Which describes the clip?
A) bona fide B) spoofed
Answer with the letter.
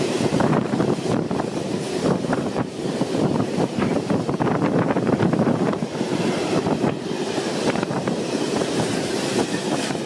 B